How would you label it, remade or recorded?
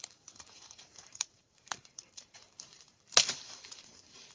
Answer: remade